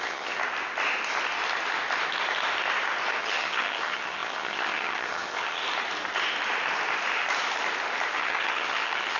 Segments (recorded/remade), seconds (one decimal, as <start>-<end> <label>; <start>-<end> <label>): 0.0-0.4 remade; 0.4-3.2 recorded; 3.2-5.6 remade; 5.6-8.1 recorded; 8.1-9.2 remade